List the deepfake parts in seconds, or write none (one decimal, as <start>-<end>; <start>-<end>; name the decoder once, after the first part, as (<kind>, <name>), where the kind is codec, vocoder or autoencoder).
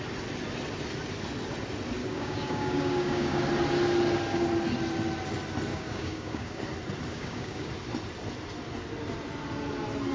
2.0-3.4 (codec, DAC); 5.7-6.6; 7.1-7.7